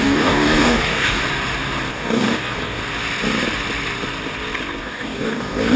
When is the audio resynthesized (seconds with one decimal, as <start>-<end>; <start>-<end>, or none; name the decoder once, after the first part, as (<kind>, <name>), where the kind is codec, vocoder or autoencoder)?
0.0-1.2 (codec, DAC); 1.9-2.8; 4.8-5.8